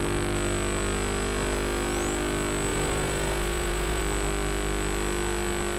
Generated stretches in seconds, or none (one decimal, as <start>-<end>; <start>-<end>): 2.7-4.0